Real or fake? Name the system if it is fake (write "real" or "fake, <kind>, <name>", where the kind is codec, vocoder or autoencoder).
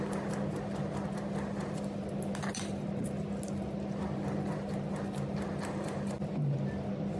real